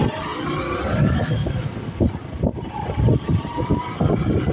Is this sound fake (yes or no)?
no